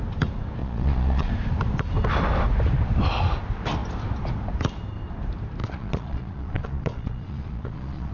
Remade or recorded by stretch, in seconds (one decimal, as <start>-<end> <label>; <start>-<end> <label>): 0.0-0.6 recorded; 0.6-1.3 remade; 1.3-5.6 recorded; 5.6-8.1 remade